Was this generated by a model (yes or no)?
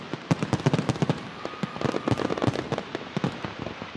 no